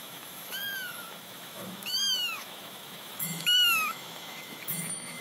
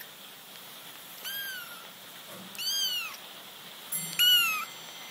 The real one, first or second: second